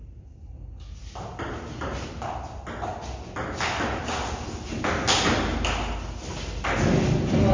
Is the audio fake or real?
real